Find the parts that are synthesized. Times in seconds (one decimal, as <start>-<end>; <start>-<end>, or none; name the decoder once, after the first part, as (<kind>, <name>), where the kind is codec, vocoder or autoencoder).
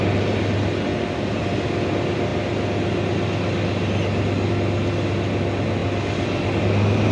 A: none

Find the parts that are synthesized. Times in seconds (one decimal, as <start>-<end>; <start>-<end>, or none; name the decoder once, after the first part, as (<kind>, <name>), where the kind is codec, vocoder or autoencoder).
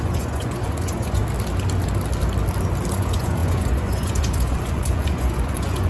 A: 0.0-1.2 (vocoder, Vocos); 2.9-5.9